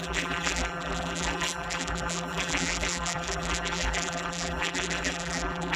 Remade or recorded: remade